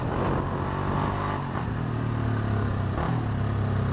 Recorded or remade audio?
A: recorded